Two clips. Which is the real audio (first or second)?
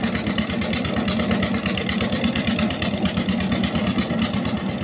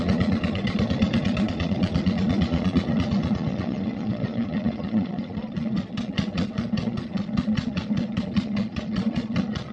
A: first